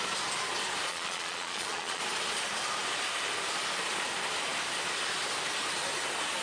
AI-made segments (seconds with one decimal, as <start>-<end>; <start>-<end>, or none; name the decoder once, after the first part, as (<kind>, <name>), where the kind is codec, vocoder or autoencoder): 0.9-2.0 (vocoder, Vocos)